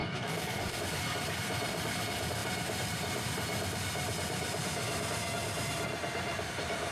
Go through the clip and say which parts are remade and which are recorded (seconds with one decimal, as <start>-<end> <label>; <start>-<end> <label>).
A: 0.0-0.8 remade; 0.8-6.9 recorded